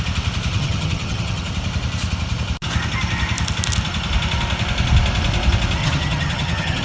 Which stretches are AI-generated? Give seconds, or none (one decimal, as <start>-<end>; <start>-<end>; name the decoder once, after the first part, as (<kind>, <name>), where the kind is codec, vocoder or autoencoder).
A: 0.5-1.5 (vocoder, HiFi-GAN); 5.8-6.8

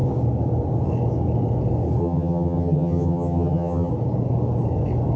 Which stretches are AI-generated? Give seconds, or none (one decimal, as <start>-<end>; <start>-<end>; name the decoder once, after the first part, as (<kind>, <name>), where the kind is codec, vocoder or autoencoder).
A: 2.0-3.9 (vocoder, HiFi-GAN)

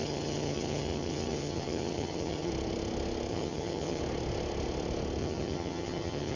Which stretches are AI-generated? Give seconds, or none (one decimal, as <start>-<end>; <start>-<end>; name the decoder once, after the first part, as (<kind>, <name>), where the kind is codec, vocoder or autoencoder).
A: 0.0-2.5 (vocoder, HiFi-GAN); 3.3-4.0; 5.2-6.4

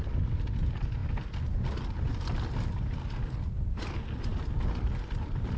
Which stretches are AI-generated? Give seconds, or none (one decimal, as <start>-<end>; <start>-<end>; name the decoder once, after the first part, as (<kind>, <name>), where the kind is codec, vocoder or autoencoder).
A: none